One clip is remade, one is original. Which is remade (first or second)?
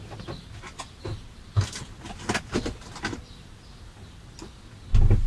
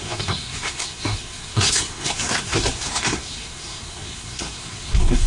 second